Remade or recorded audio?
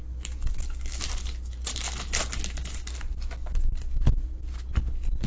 recorded